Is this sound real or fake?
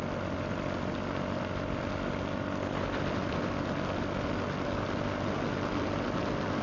real